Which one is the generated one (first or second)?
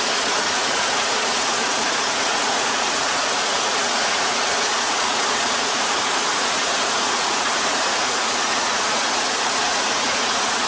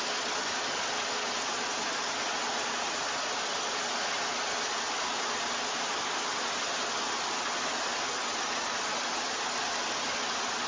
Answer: first